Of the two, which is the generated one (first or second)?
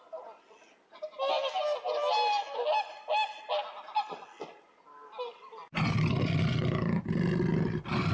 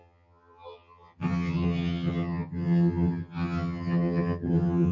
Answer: second